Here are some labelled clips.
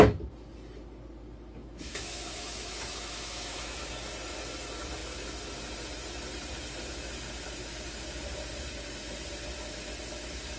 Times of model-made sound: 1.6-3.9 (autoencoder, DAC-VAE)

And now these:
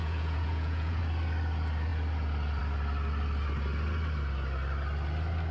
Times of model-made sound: 0.0-1.0 (vocoder, Vocos)

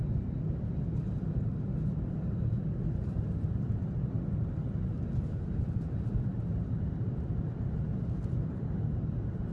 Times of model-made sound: none

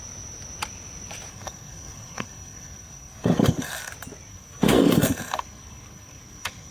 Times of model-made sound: 1.3-3.9 (codec, SNAC); 4.3-6.7